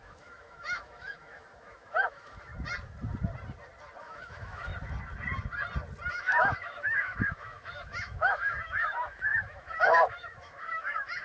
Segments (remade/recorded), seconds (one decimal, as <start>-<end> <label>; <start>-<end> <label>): 0.0-2.5 remade; 2.5-4.0 recorded; 4.0-4.7 remade; 4.7-6.1 recorded; 6.1-11.2 remade